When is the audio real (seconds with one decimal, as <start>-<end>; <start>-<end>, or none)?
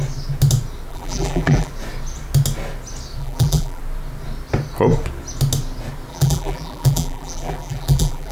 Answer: 0.0-0.9; 1.7-3.2; 3.8-6.1